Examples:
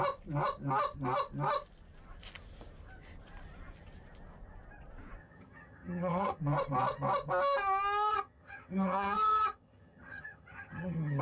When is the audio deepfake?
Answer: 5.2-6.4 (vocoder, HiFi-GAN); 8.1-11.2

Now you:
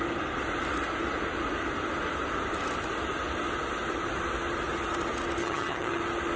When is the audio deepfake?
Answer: 5.4-6.0 (vocoder, HiFi-GAN)

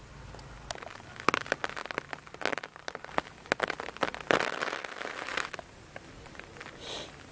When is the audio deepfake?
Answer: none

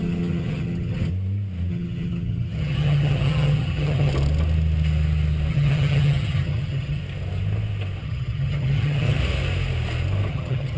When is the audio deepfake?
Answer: 0.0-1.1 (vocoder, HiFi-GAN); 1.7-4.1; 5.5-7.0; 8.0-9.2; 10.3-10.8